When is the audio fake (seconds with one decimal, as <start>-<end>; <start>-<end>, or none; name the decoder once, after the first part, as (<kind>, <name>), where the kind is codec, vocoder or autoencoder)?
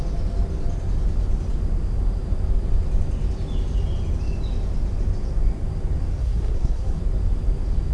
6.2-7.0 (codec, SNAC)